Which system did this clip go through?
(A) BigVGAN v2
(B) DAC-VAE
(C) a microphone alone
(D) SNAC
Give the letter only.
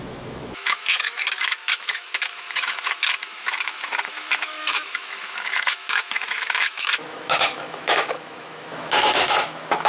B